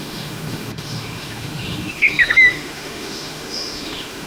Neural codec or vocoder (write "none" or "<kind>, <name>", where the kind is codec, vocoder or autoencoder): autoencoder, DAC-VAE